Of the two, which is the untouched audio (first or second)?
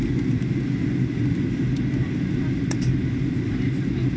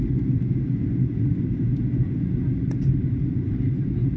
first